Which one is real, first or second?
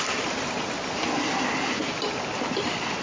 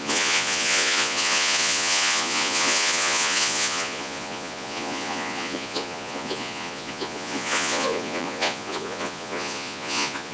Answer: first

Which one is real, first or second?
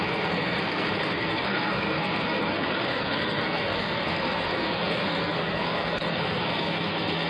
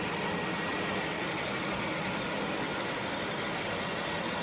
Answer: second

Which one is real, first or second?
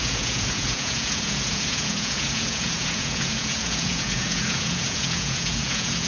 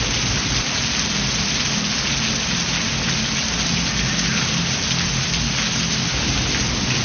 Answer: second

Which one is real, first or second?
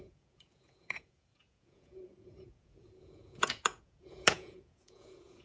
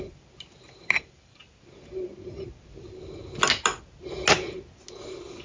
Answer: second